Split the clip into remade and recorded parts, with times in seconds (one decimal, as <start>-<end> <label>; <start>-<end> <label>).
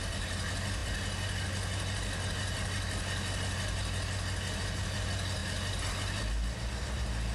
0.0-7.3 recorded